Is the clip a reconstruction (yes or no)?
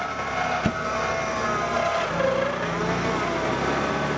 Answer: no